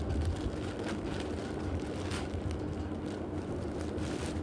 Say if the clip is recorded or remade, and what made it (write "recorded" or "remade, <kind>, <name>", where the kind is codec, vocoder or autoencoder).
recorded